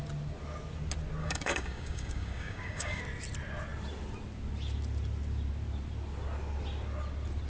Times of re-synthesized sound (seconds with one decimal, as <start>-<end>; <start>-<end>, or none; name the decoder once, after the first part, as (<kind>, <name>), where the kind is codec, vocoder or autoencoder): 1.2-3.0 (codec, DAC)